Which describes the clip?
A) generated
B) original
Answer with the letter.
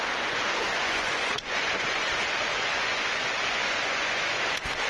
A